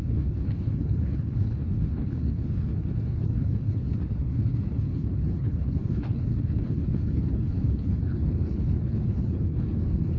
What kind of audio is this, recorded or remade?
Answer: remade